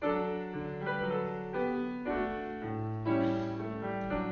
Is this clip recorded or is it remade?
recorded